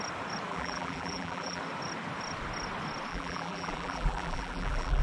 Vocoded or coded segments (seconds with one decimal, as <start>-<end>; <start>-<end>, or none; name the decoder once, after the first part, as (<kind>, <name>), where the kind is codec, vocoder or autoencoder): 0.5-1.6 (vocoder, BigVGAN v2); 3.1-5.0